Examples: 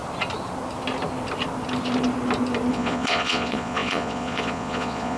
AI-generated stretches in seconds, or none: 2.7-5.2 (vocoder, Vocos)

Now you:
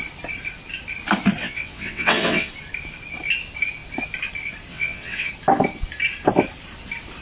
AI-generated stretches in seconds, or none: 1.4-2.5 (vocoder, WaveNeXt); 4.7-5.3

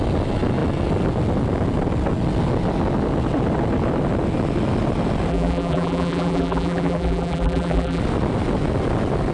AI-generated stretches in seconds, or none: 5.3-8.0 (vocoder, BigVGAN v2)

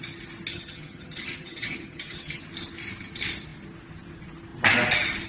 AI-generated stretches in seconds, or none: 0.5-2.4 (vocoder, HiFi-GAN)

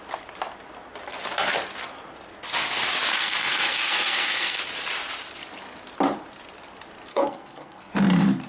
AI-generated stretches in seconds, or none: 3.1-4.6 (codec, SNAC); 7.1-7.9